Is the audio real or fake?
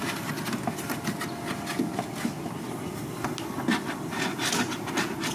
real